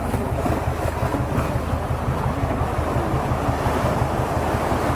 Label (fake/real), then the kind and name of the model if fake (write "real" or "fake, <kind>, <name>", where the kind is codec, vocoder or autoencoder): real